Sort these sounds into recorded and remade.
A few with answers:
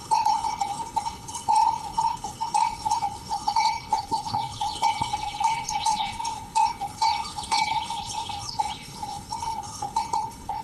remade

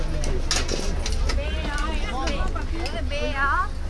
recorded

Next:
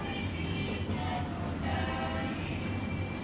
recorded